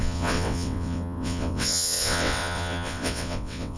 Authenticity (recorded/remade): remade